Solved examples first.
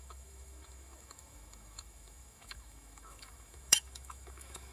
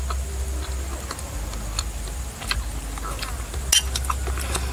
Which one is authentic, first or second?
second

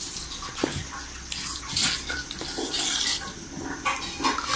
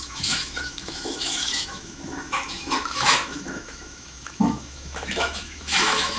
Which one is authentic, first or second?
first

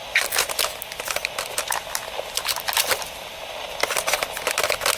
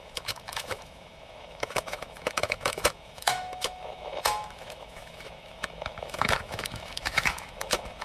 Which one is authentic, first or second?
first